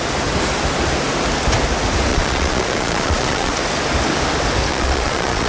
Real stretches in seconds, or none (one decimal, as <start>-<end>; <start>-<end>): 0.0-2.1; 3.6-4.7